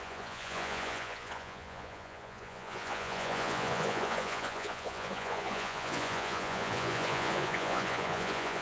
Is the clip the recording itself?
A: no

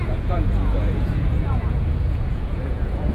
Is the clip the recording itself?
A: no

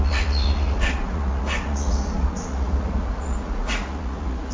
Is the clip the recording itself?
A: no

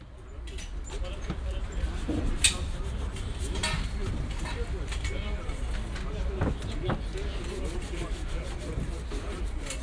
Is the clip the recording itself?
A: yes